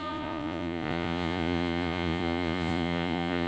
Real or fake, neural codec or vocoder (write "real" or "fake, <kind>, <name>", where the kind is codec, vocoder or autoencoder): fake, vocoder, Vocos